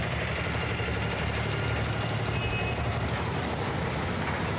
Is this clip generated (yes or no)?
no